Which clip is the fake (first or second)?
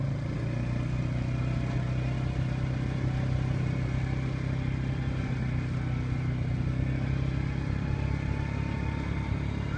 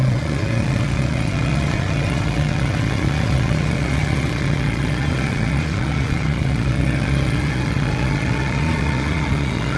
second